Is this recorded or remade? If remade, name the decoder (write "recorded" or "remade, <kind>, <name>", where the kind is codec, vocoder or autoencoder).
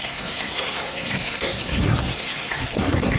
remade, codec, SNAC